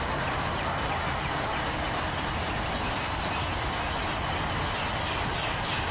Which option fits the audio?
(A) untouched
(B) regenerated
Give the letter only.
A